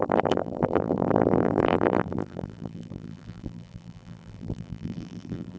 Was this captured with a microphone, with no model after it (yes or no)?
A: no